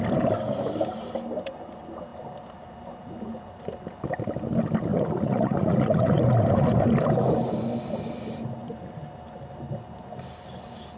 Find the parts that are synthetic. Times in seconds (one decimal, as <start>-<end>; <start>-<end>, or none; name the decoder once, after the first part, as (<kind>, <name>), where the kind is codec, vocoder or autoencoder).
4.9-6.2 (vocoder, Vocos)